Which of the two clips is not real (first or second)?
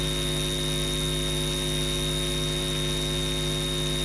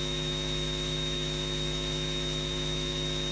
second